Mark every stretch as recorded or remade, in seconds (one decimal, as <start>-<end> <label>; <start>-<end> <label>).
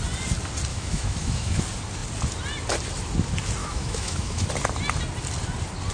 0.0-0.7 recorded; 0.7-1.6 remade; 1.6-3.6 recorded; 3.6-4.5 remade; 4.5-5.9 recorded